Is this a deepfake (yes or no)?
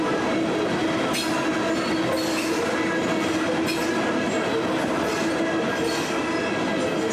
no